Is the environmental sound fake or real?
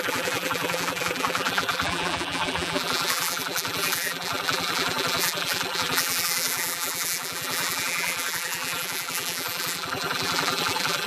fake